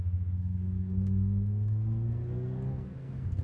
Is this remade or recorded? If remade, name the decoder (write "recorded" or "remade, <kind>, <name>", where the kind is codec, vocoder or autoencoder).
remade, codec, SNAC